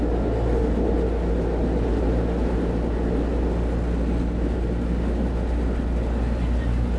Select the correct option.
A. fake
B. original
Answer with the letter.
B